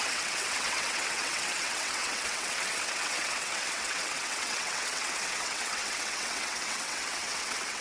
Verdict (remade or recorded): remade